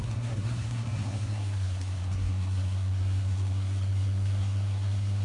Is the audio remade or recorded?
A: remade